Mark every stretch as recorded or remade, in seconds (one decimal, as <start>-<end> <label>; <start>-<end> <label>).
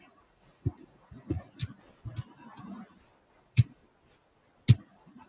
0.0-1.6 remade; 1.6-3.4 recorded; 3.4-3.8 remade; 3.8-4.8 recorded; 4.8-5.3 remade